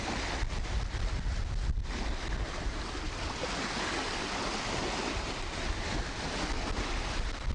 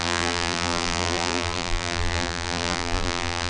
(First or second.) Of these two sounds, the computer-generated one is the second